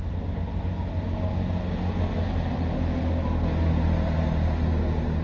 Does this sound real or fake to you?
real